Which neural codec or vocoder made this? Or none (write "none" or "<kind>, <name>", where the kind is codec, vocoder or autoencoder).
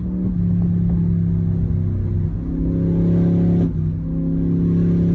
none